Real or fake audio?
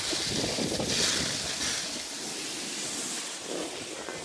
real